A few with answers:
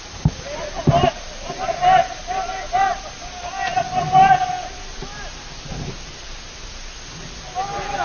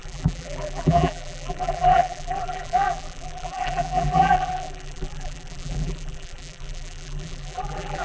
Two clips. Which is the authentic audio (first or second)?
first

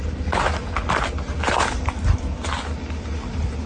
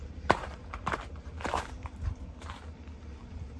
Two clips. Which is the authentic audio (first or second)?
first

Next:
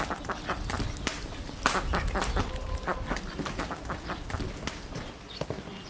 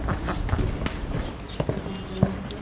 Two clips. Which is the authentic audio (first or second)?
second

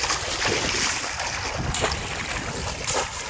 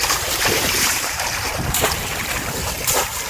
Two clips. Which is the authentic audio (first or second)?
first